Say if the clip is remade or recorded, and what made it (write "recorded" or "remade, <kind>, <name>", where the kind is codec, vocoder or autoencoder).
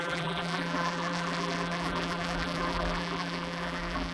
remade, vocoder, BigVGAN v2